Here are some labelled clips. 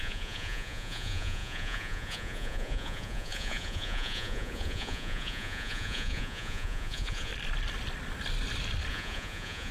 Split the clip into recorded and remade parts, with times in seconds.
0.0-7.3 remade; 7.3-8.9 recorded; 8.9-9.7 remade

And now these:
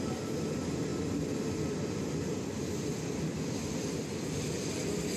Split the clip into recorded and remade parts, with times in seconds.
0.0-0.9 remade; 0.9-4.0 recorded; 4.0-5.2 remade